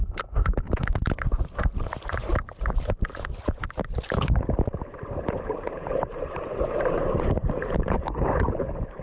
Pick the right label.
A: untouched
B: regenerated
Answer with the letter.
B